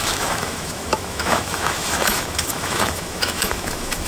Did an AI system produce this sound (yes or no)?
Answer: yes